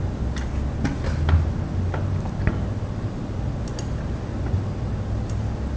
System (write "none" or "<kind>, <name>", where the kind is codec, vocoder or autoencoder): none